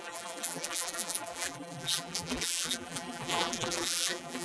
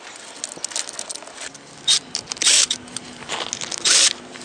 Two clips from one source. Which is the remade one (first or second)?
first